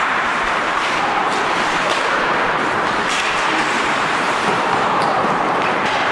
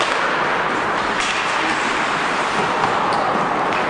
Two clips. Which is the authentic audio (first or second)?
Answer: second